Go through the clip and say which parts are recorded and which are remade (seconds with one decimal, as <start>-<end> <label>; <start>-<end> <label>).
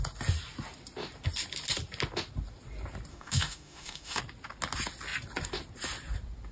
0.0-3.1 recorded; 3.1-4.2 remade; 4.2-6.5 recorded